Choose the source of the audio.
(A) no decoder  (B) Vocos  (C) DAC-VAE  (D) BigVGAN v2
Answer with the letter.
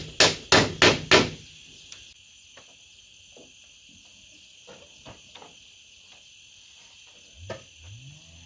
A